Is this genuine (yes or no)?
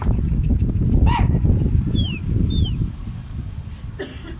yes